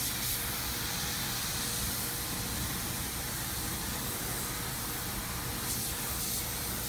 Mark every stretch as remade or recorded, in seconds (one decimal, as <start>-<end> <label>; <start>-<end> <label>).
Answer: 0.0-5.5 remade; 5.5-6.4 recorded; 6.4-6.9 remade